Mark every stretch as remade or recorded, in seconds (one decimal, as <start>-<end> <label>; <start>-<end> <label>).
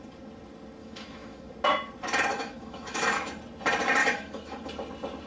0.0-0.8 recorded; 0.8-1.5 remade; 1.5-2.3 recorded; 2.3-3.3 remade; 3.3-4.0 recorded; 4.0-4.6 remade; 4.6-5.3 recorded